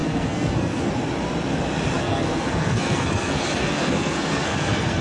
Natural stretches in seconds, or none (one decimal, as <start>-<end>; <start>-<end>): 0.9-2.0